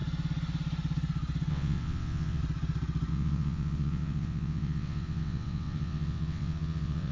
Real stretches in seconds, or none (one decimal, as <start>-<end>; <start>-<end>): 0.0-1.5; 2.4-3.1